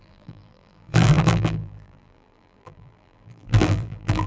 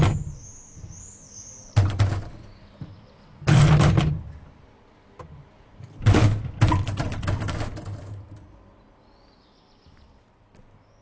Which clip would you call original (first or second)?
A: second